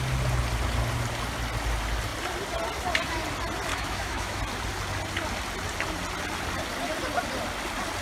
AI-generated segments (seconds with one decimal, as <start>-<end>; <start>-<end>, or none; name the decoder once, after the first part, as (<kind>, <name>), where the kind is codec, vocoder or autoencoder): 3.7-4.4 (autoencoder, DAC-VAE)